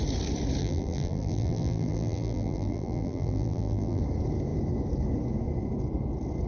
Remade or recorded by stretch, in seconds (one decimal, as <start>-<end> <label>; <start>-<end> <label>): 0.0-0.6 recorded; 0.6-4.0 remade; 4.0-6.5 recorded